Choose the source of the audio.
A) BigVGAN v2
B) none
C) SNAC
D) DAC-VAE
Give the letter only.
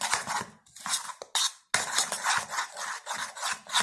B